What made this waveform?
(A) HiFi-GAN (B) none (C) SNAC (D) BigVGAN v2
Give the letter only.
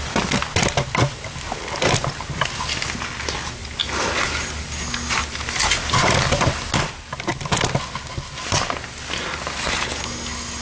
B